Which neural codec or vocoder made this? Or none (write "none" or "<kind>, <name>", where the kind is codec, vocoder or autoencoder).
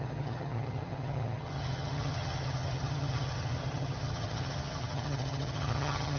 vocoder, HiFi-GAN